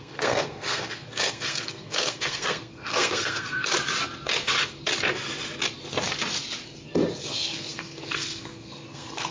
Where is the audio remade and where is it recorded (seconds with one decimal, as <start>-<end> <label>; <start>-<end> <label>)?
0.0-3.7 remade; 3.7-7.2 recorded; 7.2-9.3 remade